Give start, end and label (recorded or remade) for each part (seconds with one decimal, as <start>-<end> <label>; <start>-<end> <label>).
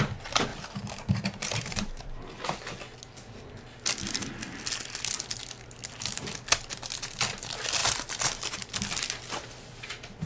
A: 0.0-0.5 recorded; 0.5-2.0 remade; 2.0-7.8 recorded; 7.8-8.7 remade; 8.7-10.3 recorded